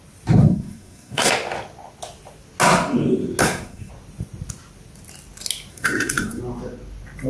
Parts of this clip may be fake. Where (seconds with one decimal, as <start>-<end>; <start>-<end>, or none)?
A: 0.4-1.3; 3.4-3.9; 5.7-6.4